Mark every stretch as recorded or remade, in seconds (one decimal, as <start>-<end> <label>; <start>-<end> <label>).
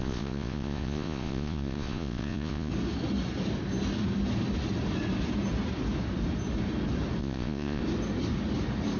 0.0-2.7 remade; 2.7-7.2 recorded; 7.2-7.8 remade; 7.8-9.0 recorded